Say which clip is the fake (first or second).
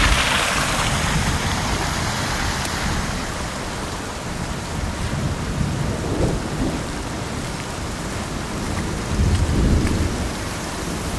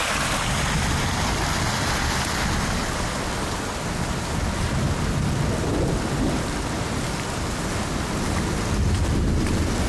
first